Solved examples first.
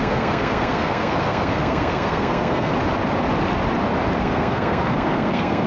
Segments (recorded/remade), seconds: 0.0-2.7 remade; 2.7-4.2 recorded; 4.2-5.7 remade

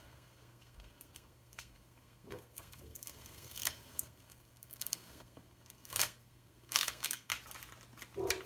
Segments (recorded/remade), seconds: 0.0-7.3 remade; 7.3-8.5 recorded

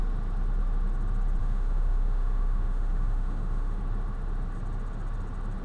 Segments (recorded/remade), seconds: 0.0-1.4 recorded; 1.4-3.8 remade; 3.8-5.6 recorded

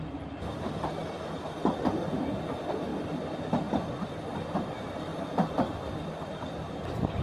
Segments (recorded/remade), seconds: 0.0-7.2 recorded

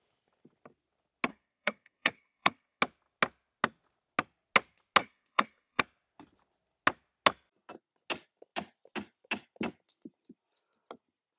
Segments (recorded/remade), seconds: 0.0-1.3 recorded; 1.3-2.8 remade; 2.8-5.0 recorded; 5.0-5.8 remade; 5.8-11.4 recorded